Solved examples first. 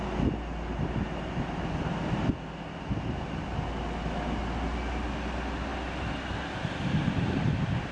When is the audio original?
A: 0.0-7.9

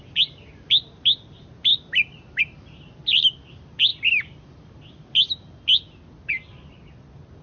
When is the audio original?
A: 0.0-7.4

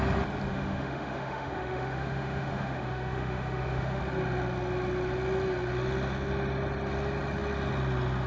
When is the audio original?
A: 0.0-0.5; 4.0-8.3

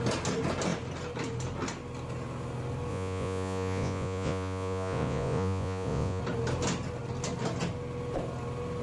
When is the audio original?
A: 0.0-2.9; 6.2-8.8

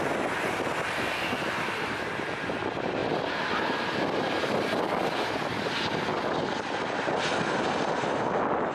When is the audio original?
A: 0.0-8.7

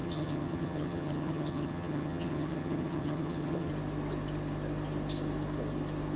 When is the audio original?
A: 3.7-6.2

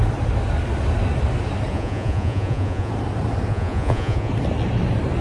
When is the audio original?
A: 0.0-1.7; 2.9-3.5; 4.3-5.2

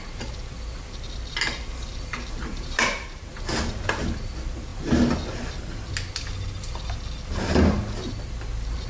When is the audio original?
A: 0.0-2.5; 3.3-8.9